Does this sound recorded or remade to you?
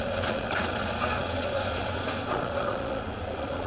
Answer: remade